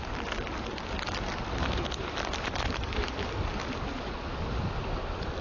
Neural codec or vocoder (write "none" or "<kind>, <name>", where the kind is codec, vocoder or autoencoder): none